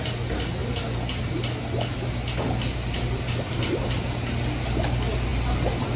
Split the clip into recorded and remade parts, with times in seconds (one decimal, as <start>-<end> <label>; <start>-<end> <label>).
0.0-6.0 recorded

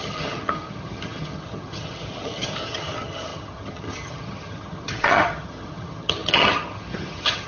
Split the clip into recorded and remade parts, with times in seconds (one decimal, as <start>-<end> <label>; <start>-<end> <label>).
0.0-7.5 remade